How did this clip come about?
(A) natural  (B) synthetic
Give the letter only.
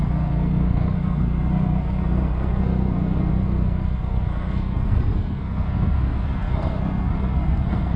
B